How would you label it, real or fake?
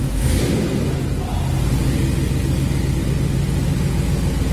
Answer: real